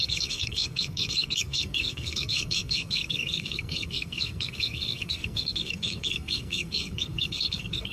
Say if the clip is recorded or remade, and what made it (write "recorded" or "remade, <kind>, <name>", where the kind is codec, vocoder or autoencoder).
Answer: remade, codec, SNAC